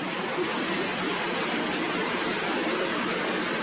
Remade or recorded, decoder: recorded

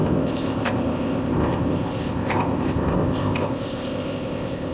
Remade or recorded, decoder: remade, codec, ZipCodec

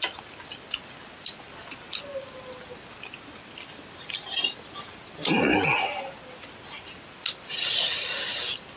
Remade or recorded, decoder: recorded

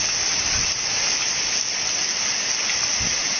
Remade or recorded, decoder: recorded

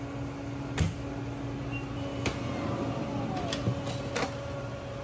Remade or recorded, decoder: recorded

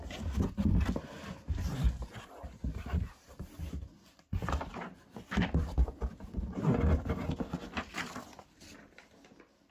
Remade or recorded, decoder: recorded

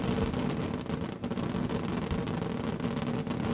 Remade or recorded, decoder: recorded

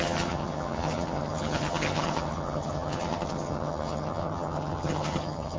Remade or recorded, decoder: remade, vocoder, HiFi-GAN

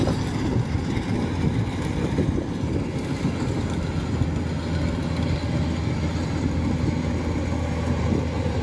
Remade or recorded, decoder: recorded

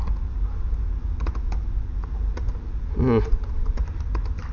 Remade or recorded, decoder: recorded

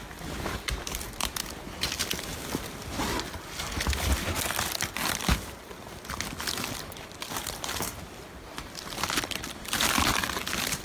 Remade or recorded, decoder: recorded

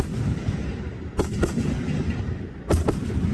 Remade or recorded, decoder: recorded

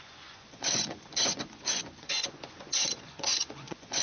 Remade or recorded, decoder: remade, vocoder, Vocos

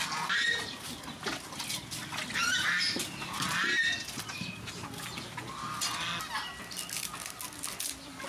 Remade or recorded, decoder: recorded